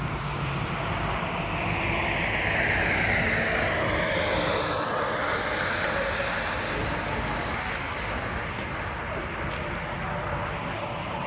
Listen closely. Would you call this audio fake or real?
fake